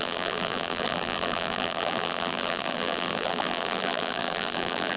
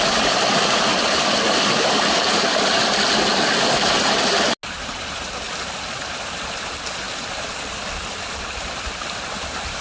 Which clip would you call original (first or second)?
second